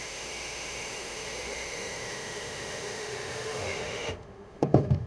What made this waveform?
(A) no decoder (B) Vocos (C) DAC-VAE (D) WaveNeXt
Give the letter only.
C